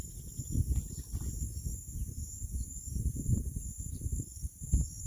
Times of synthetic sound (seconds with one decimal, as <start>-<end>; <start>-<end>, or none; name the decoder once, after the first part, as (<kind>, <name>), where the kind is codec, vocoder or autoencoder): 2.0-3.9 (vocoder, BigVGAN v2)